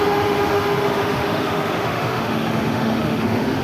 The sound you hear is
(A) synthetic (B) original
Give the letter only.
A